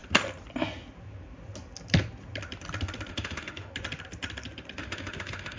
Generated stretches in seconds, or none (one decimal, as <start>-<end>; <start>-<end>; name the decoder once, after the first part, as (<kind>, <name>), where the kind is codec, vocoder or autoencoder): 3.1-3.7 (autoencoder, DAC-VAE); 4.8-5.6